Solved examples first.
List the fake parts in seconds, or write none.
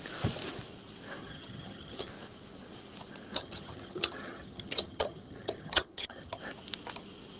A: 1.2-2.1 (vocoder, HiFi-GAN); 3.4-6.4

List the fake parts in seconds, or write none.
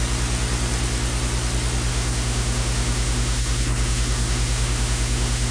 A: 1.9-5.5 (autoencoder, DAC-VAE)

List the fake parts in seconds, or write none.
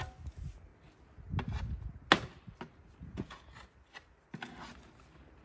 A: 3.0-3.5 (vocoder, Vocos)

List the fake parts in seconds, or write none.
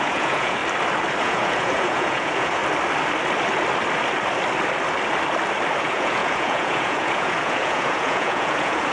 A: 0.0-0.6 (vocoder, Vocos); 1.2-2.6; 5.8-8.9